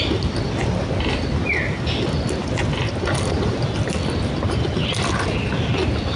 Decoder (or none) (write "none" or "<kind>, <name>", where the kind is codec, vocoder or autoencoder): none